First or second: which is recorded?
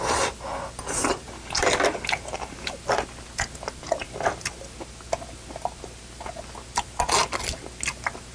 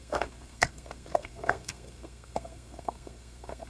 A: first